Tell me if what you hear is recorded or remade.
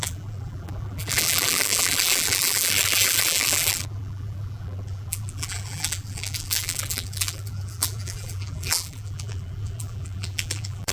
remade